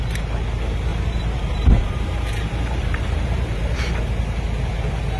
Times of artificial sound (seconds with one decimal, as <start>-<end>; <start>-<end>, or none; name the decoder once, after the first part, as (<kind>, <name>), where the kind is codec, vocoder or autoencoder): 0.9-4.0 (vocoder, BigVGAN v2)